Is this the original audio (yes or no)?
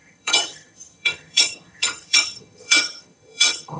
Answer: no